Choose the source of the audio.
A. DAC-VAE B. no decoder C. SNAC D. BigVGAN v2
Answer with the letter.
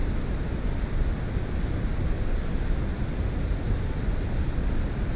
B